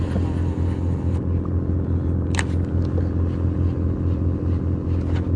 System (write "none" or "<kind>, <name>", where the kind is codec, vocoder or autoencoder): none